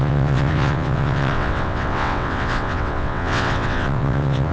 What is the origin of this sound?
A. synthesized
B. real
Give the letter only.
A